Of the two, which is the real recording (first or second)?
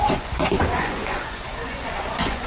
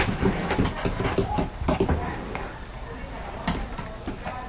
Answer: second